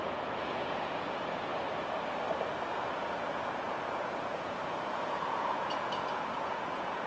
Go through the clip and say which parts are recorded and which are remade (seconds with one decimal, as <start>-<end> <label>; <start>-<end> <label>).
0.0-1.5 remade; 1.5-2.6 recorded; 2.6-7.1 remade